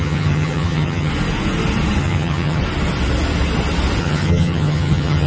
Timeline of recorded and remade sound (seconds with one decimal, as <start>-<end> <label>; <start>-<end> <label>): 0.0-1.1 remade; 1.1-2.0 recorded; 2.0-2.6 remade; 2.6-4.0 recorded; 4.0-5.3 remade